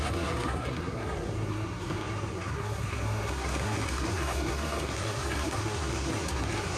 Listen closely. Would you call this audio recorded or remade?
remade